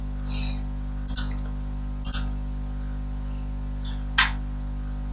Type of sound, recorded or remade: recorded